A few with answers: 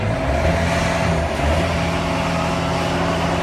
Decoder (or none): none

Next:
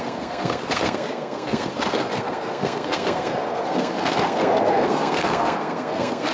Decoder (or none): codec, SNAC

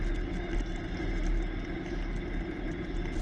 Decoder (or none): none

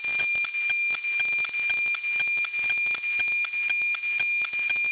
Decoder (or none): none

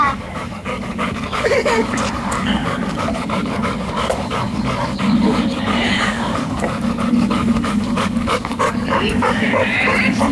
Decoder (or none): codec, DAC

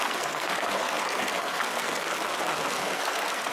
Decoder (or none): codec, SNAC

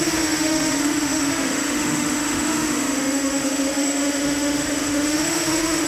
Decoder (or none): autoencoder, DAC-VAE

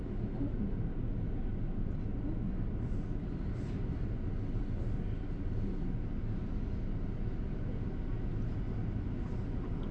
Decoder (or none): none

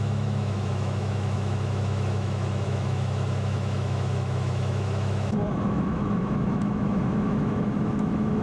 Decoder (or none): autoencoder, DAC-VAE